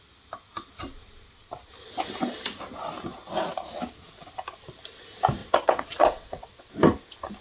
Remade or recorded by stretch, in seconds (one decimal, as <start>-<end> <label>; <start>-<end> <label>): 0.0-5.4 recorded; 5.4-6.7 remade; 6.7-7.4 recorded